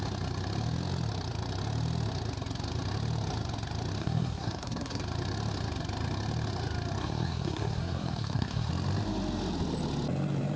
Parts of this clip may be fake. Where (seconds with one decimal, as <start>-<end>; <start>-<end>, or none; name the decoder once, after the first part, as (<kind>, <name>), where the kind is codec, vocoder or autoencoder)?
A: 4.0-5.0 (codec, SNAC); 7.0-8.7